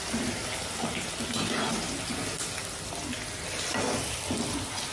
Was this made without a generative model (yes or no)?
yes